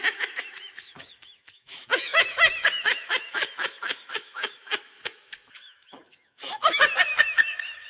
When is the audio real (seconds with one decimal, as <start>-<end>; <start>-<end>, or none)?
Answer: none